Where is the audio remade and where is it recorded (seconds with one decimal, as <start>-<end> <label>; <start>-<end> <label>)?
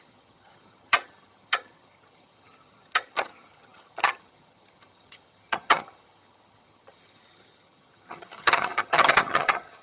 0.0-9.8 remade